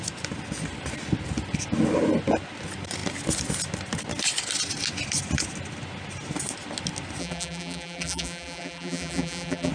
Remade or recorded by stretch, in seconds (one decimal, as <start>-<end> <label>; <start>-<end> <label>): 0.0-7.2 recorded; 7.2-9.7 remade